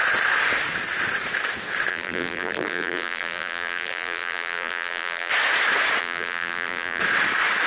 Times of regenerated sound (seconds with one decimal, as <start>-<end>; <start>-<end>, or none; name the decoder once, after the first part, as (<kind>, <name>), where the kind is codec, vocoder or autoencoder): 1.9-5.3 (vocoder, BigVGAN v2); 6.0-7.0